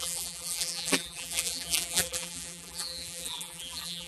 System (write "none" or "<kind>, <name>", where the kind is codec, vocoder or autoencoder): vocoder, BigVGAN v2